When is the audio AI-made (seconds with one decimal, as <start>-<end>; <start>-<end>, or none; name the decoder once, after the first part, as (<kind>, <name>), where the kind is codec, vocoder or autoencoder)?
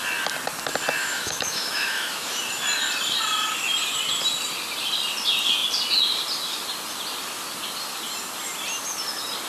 1.0-2.4 (autoencoder, DAC-VAE)